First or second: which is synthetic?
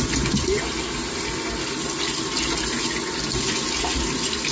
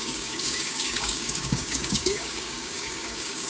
second